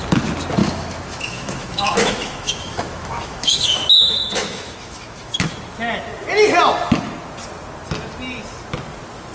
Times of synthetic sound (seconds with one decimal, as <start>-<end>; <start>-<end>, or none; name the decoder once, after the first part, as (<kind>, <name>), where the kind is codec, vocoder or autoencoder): 0.6-5.5 (autoencoder, DAC-VAE)